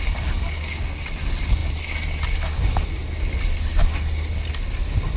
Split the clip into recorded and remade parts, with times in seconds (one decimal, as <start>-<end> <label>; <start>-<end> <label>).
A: 0.0-5.2 recorded